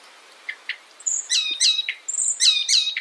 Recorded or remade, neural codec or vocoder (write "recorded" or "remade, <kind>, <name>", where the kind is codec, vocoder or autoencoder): remade, vocoder, BigVGAN v2